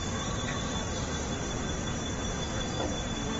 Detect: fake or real real